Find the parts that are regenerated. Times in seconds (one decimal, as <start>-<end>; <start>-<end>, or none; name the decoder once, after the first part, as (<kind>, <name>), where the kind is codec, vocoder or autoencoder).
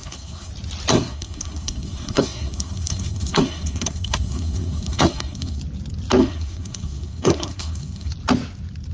0.0-0.5 (codec, SNAC); 0.9-5.6; 6.2-8.1